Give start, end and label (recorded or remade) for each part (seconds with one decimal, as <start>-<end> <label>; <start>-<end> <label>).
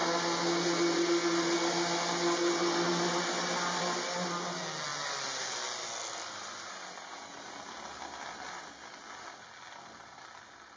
0.0-10.8 recorded